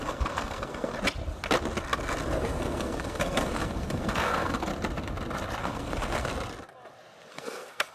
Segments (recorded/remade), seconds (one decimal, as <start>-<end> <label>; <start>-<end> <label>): 0.0-0.9 remade; 0.9-2.4 recorded; 2.4-4.7 remade; 4.7-5.6 recorded; 5.6-6.3 remade; 6.3-7.3 recorded; 7.3-7.9 remade